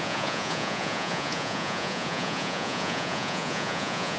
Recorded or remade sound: remade